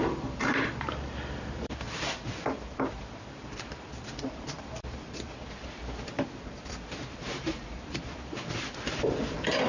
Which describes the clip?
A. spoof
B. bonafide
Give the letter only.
A